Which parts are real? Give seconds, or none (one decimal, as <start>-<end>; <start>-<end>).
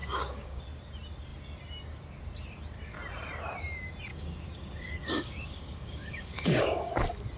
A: 0.6-4.1; 6.9-7.4